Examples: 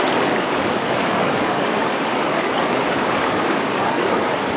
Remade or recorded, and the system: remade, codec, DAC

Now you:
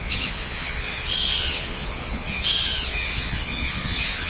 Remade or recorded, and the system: remade, vocoder, Vocos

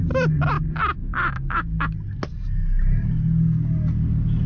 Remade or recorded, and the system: recorded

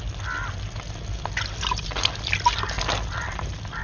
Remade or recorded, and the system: recorded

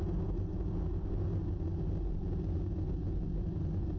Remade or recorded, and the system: recorded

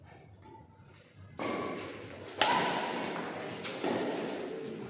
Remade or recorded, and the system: recorded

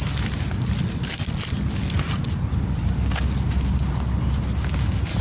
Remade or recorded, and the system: recorded